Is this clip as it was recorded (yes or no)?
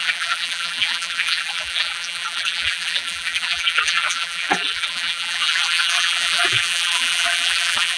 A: no